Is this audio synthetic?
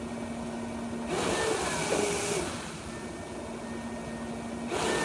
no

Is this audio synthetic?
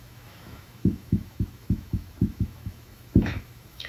yes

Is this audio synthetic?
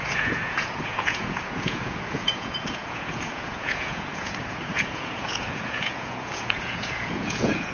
yes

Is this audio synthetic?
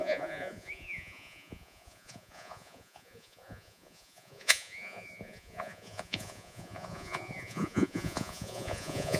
yes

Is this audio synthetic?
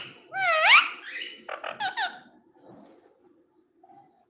no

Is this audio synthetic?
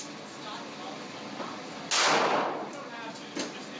no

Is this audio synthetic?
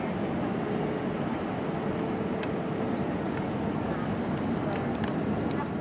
no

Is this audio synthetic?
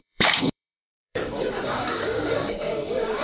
yes